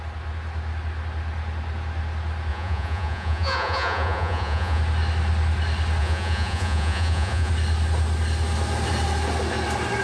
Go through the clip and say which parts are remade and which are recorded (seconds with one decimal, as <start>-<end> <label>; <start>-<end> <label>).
0.0-2.5 recorded; 2.5-4.8 remade; 4.8-6.0 recorded; 6.0-7.5 remade; 7.5-10.0 recorded